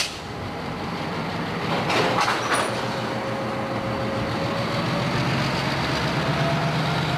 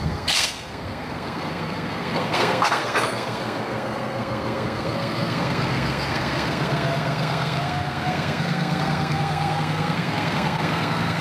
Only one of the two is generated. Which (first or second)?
second